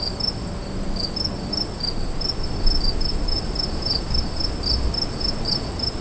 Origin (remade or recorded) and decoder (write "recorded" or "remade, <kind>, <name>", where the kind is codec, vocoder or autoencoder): recorded